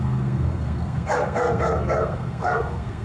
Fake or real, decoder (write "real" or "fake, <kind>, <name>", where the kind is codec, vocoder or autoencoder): fake, codec, SNAC